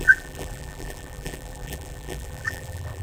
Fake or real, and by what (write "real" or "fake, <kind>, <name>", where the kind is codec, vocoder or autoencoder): fake, vocoder, BigVGAN v2